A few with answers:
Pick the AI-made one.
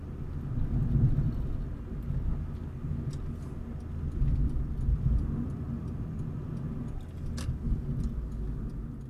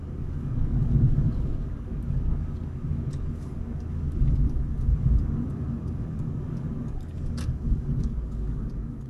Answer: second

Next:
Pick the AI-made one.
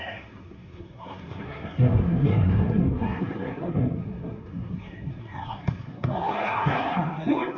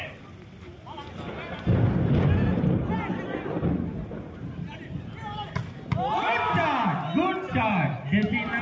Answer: first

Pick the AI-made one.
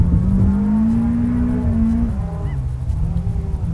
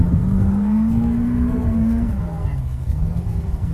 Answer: second